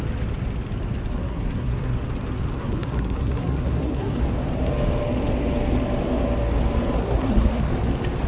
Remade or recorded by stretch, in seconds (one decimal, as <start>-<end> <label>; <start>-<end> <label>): 0.0-1.1 recorded; 1.1-1.9 remade; 1.9-2.6 recorded; 2.6-4.2 remade; 4.2-7.0 recorded; 7.0-7.7 remade; 7.7-8.3 recorded